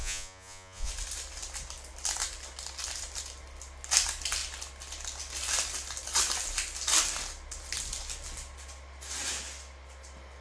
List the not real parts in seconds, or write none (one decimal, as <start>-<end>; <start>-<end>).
0.0-0.9